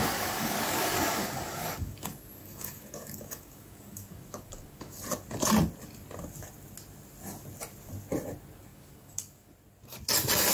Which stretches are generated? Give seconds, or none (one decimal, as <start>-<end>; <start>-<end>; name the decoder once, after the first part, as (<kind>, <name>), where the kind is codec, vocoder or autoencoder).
0.0-5.0 (codec, DAC); 8.7-9.5